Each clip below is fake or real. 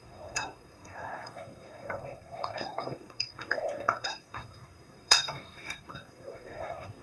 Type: fake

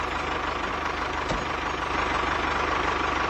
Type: real